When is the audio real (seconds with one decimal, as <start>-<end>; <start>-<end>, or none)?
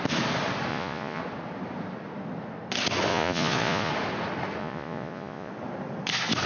0.0-0.7; 1.2-3.1; 3.9-4.6; 5.5-6.5